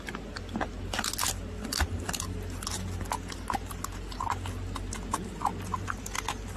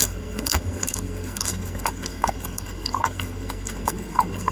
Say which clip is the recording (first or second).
first